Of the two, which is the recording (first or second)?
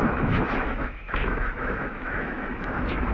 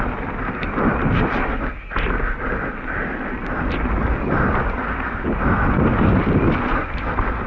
second